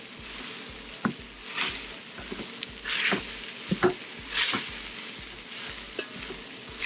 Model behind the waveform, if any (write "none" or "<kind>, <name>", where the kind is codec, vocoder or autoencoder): none